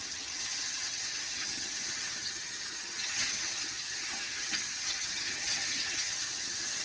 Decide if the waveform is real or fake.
fake